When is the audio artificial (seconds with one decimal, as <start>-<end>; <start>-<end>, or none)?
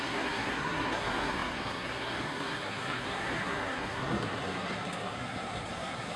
0.0-6.2